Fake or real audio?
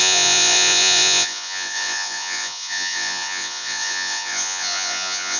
fake